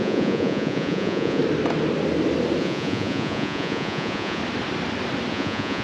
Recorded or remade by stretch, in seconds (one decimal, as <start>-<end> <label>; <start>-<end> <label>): 0.0-1.4 remade; 1.4-2.6 recorded; 2.6-4.4 remade; 4.4-5.3 recorded; 5.3-5.8 remade

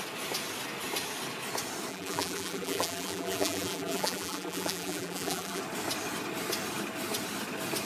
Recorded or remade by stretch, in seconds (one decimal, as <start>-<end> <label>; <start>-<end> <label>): 0.0-1.9 recorded; 1.9-5.6 remade; 5.6-7.9 recorded

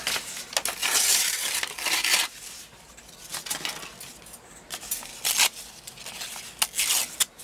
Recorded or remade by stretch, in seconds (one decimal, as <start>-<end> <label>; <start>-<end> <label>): 0.0-0.8 recorded; 0.8-2.9 remade; 2.9-7.4 recorded